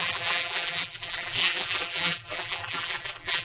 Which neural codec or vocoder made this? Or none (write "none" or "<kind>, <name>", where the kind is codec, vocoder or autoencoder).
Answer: vocoder, BigVGAN v2